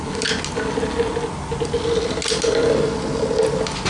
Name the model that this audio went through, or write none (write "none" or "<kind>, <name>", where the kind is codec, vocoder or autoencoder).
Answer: none